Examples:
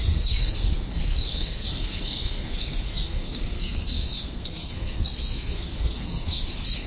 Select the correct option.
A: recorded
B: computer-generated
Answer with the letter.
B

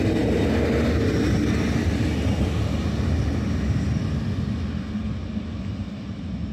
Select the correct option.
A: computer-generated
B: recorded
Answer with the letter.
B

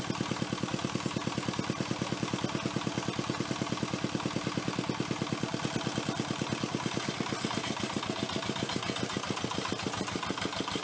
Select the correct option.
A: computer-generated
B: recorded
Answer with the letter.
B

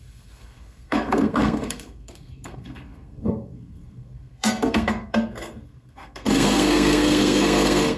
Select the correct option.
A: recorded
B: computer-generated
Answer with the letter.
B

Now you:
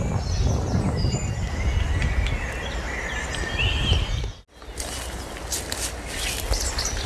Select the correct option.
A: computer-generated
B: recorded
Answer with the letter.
B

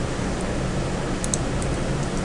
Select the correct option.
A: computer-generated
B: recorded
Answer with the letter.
B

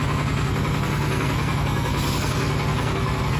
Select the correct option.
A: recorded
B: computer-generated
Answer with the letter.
B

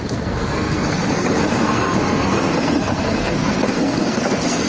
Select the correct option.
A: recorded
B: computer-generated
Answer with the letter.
B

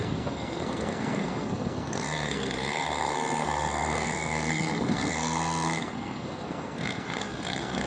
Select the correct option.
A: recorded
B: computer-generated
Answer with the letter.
B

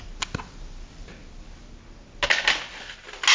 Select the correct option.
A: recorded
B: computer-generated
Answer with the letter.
A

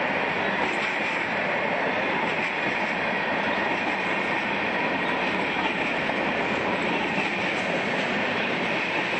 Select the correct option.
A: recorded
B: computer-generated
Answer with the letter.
A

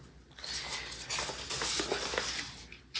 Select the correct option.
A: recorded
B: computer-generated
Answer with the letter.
A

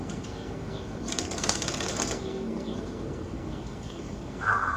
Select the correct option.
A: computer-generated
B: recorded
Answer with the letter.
A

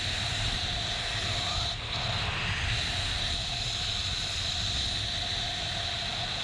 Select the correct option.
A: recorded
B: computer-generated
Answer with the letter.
A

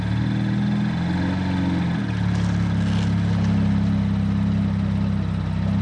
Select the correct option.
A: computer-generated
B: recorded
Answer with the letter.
B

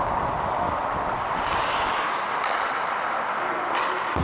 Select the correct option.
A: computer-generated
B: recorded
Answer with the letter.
B